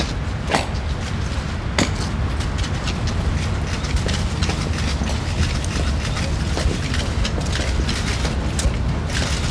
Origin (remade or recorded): recorded